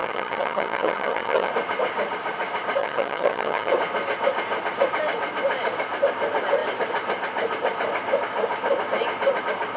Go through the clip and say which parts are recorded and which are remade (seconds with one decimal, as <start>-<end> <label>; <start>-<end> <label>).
0.0-1.5 remade; 1.5-2.8 recorded; 2.8-3.7 remade; 3.7-9.8 recorded